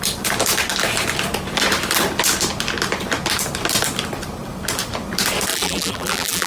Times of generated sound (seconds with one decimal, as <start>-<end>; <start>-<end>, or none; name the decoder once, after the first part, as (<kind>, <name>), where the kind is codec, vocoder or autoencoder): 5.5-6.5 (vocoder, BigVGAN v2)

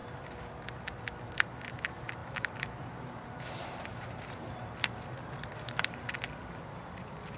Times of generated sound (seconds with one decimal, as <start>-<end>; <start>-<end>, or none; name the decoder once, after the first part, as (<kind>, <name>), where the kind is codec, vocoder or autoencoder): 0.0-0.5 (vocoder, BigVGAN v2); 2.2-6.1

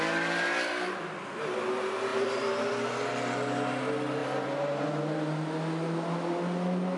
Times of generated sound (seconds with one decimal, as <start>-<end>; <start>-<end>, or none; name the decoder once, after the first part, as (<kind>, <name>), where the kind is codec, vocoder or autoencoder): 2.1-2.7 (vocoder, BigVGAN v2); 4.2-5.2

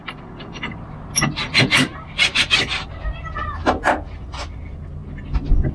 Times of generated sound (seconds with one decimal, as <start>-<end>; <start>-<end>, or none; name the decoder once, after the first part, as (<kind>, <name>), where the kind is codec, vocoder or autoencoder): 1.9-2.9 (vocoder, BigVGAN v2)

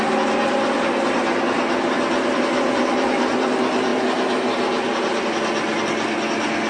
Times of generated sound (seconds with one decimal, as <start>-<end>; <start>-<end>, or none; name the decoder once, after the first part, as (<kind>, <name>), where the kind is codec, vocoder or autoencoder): none

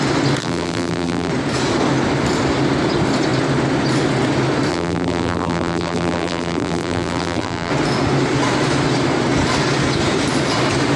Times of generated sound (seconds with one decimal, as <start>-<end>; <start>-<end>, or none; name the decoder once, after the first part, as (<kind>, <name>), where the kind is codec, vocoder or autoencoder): 0.4-1.3 (vocoder, BigVGAN v2); 4.7-7.7

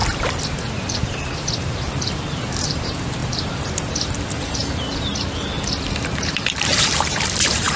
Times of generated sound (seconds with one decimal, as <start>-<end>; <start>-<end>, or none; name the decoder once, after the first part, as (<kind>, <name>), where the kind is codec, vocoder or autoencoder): 0.8-7.8 (vocoder, BigVGAN v2)

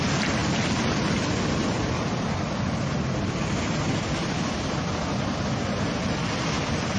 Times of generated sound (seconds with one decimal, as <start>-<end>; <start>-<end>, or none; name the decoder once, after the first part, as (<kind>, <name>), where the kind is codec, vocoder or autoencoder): none